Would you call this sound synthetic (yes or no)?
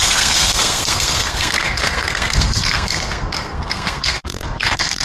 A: yes